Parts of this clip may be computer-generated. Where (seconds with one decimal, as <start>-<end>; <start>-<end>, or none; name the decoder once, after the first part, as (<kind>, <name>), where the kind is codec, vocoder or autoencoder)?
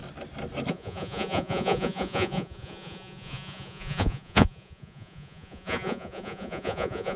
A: 0.7-7.2 (vocoder, Vocos)